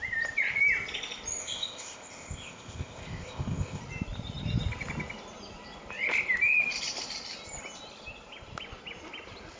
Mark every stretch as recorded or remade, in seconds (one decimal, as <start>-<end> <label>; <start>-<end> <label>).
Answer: 0.0-1.4 recorded; 1.4-3.8 remade; 3.8-9.6 recorded